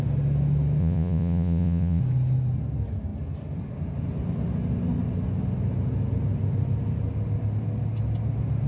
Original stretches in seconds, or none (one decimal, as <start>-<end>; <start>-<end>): 0.0-0.8; 2.0-8.7